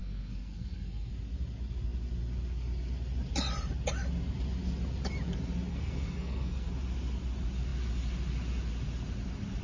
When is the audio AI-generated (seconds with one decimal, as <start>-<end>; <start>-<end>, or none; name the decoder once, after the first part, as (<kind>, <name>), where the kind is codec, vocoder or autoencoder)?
0.0-1.1 (codec, SNAC); 5.7-6.7